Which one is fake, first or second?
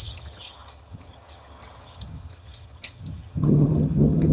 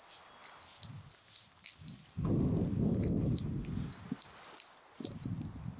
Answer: first